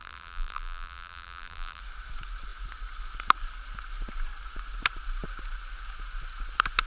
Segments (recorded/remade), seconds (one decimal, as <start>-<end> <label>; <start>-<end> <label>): 0.0-1.8 remade; 1.8-6.9 recorded